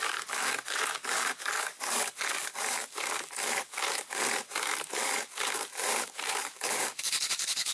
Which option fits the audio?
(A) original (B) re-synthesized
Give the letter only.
B